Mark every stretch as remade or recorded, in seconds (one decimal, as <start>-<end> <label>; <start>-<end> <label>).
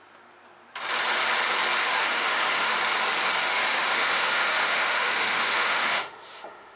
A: 0.0-1.8 recorded; 1.8-2.7 remade; 2.7-3.5 recorded; 3.5-6.8 remade